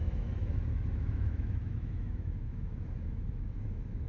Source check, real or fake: fake